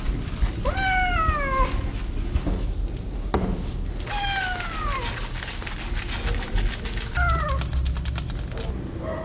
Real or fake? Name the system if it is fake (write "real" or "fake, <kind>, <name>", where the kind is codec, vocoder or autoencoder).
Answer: real